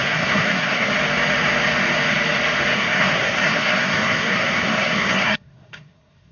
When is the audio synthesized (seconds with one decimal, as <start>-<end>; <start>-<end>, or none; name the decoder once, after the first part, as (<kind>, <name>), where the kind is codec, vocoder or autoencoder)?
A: 0.0-0.9 (codec, SNAC); 2.7-6.3